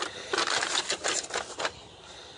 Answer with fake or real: real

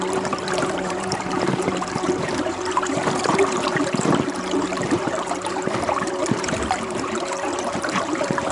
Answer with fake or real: fake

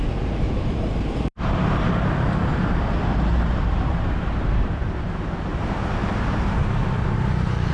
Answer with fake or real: fake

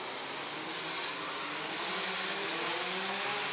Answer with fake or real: real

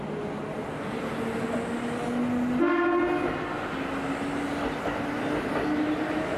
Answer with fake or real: real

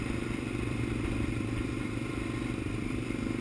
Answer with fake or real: fake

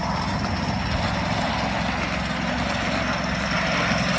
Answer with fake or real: real